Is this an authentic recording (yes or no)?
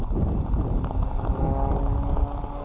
yes